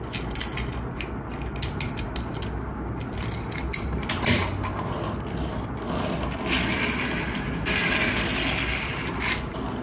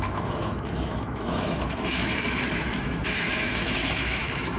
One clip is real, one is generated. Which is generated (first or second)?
second